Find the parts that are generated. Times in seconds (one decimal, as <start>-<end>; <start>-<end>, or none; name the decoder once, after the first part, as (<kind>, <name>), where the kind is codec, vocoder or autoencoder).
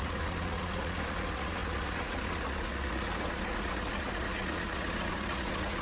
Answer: 0.0-5.8 (vocoder, Vocos)